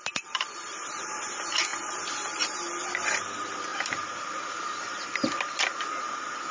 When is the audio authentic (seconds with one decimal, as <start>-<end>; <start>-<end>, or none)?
0.0-3.7; 4.4-6.5